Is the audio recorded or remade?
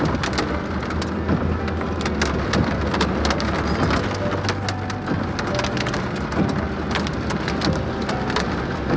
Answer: recorded